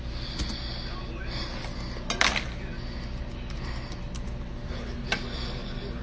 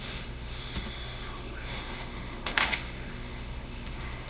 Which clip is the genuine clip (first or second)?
first